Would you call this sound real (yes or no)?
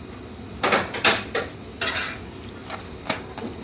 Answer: no